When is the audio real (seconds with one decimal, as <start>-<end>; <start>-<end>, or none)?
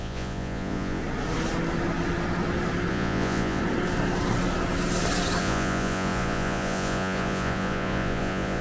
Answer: 1.0-2.9; 3.6-5.4